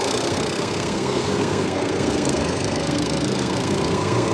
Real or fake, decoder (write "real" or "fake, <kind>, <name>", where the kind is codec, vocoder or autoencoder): fake, codec, SNAC